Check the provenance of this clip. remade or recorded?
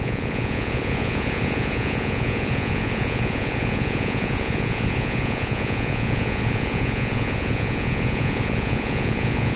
remade